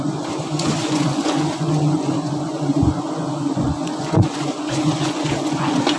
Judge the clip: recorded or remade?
remade